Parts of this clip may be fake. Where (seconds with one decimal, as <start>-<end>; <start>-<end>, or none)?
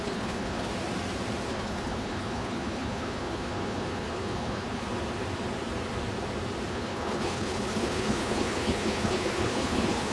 0.0-0.7; 1.5-4.8; 6.7-10.1